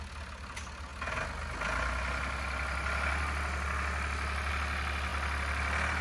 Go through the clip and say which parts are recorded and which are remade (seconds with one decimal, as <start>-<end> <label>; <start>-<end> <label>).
0.0-6.0 recorded

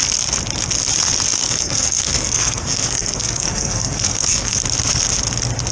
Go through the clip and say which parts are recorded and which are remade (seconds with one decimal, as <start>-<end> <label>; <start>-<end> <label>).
0.0-1.4 recorded; 1.4-4.6 remade; 4.6-5.7 recorded

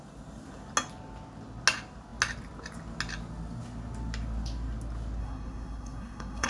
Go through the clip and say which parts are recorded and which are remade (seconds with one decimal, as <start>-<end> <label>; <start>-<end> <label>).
0.0-5.2 recorded; 5.2-6.5 remade

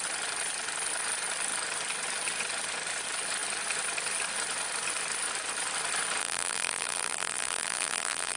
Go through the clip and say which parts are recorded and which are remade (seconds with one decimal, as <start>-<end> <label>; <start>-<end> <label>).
0.0-6.2 recorded; 6.2-8.4 remade